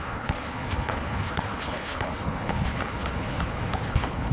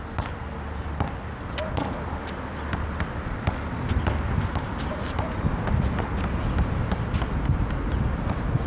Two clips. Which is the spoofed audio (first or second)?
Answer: first